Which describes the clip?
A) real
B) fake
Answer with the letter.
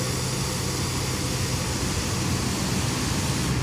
A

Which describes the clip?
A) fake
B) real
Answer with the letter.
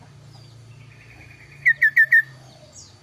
B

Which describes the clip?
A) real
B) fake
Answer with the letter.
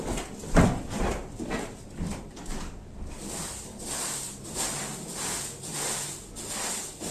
A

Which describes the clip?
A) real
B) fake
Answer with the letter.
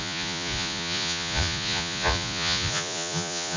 B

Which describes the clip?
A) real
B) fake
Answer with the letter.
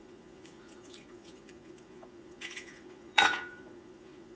B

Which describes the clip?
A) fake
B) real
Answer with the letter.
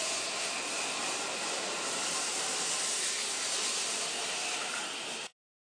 B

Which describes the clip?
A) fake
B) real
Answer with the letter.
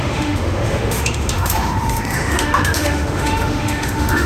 A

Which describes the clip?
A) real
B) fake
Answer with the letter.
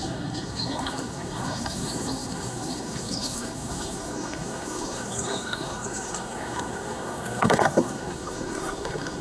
B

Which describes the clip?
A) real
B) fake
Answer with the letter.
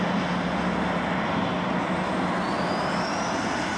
A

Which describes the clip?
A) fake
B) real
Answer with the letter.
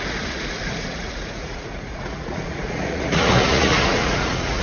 A